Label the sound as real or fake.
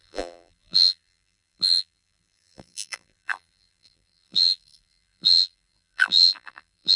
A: fake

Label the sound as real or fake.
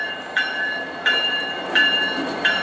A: fake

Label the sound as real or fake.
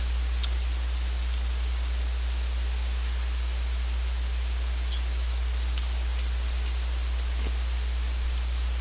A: real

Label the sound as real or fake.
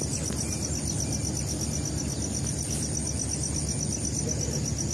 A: real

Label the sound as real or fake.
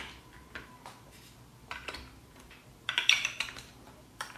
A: fake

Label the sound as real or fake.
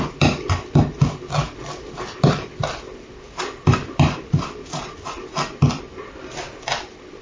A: fake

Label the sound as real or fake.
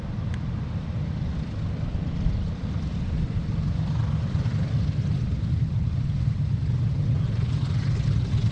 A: real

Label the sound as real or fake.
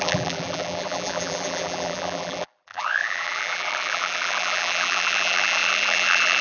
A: fake